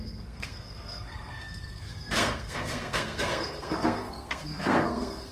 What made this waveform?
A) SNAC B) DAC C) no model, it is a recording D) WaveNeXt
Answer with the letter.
A